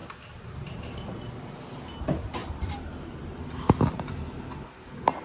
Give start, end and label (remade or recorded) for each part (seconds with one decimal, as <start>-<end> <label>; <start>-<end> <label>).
0.0-2.4 recorded; 2.4-3.2 remade; 3.2-5.2 recorded